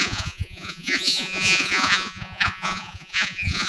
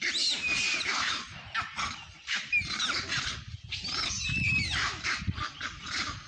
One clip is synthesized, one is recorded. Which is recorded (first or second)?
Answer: second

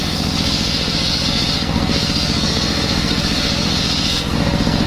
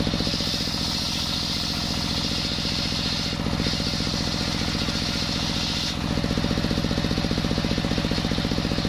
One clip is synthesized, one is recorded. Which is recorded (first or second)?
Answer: second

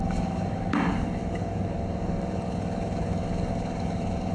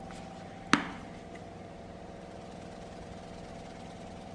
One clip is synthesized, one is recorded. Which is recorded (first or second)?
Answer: second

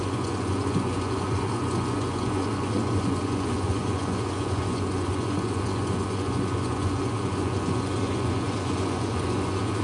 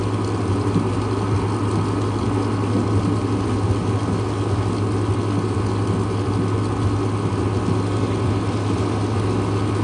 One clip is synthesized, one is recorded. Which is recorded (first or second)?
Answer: second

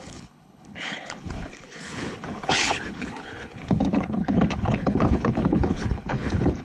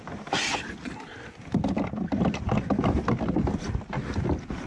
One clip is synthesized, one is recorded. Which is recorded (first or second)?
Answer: second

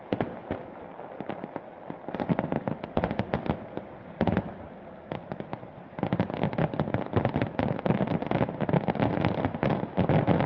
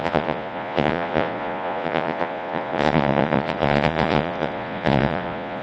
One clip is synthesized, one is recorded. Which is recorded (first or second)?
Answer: first